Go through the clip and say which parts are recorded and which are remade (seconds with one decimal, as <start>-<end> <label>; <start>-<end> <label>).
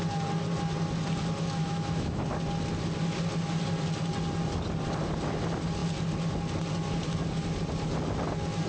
0.0-1.6 recorded; 1.6-2.2 remade; 2.2-8.7 recorded